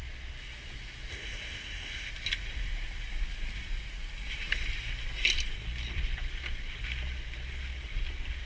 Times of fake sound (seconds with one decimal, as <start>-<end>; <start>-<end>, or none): 1.1-2.1